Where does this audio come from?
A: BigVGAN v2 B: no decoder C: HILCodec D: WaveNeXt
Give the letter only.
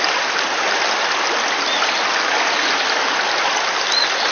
B